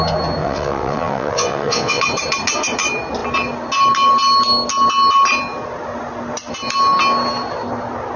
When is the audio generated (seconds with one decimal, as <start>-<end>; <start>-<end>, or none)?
0.4-2.0